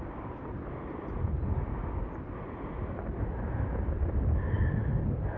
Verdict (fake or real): real